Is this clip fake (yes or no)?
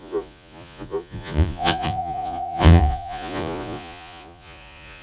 yes